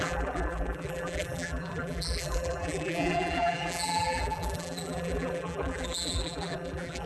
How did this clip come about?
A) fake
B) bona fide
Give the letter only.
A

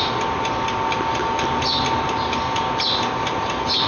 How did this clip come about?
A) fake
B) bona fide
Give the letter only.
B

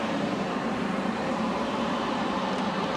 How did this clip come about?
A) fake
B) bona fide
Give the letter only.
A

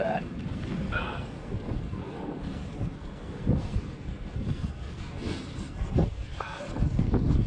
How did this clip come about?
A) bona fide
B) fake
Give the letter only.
B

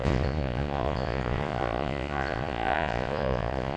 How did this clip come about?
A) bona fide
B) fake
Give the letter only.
B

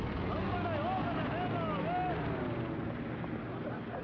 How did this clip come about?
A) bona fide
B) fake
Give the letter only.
A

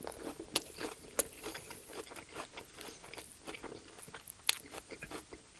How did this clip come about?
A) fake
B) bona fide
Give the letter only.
B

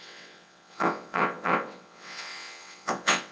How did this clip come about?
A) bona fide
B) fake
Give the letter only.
B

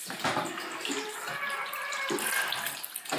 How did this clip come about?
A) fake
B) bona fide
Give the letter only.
B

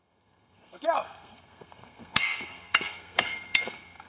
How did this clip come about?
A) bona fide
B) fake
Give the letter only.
B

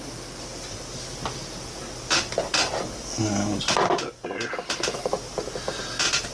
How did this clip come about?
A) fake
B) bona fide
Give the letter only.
B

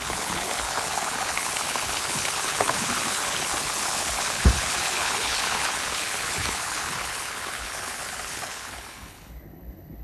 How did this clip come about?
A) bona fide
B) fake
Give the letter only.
B